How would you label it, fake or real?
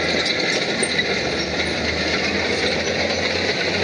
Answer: real